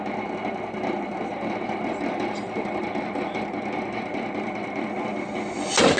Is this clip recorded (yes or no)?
yes